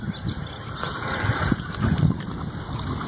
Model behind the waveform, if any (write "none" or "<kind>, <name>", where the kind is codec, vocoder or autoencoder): none